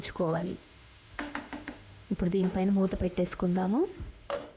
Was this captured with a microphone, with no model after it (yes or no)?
no